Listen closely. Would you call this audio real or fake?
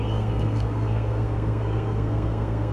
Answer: fake